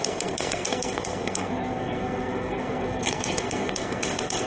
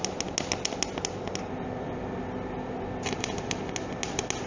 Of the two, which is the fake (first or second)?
first